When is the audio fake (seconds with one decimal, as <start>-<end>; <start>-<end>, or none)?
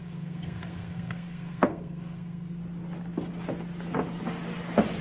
0.0-2.6